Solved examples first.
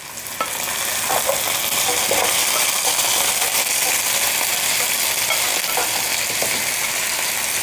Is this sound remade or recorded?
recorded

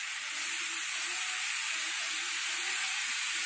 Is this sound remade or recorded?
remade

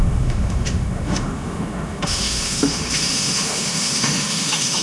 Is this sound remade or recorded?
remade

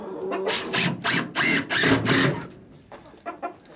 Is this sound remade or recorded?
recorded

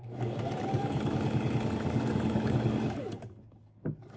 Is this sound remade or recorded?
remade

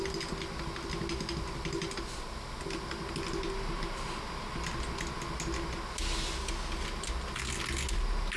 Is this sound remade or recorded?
recorded